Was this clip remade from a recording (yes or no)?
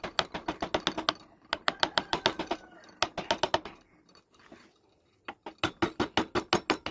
no